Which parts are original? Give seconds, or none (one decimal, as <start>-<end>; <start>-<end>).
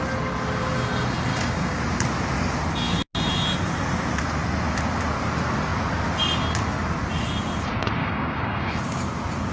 0.0-1.3; 1.8-8.0; 8.8-9.5